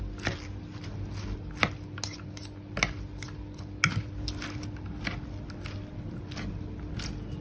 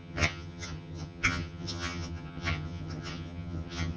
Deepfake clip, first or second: second